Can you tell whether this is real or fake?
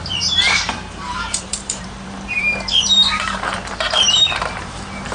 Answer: fake